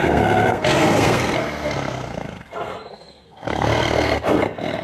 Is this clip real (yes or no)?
no